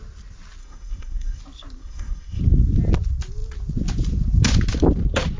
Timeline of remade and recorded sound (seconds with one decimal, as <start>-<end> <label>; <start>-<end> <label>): 0.0-0.6 recorded; 0.6-1.4 remade; 1.4-1.8 recorded; 1.8-2.4 remade; 2.4-5.4 recorded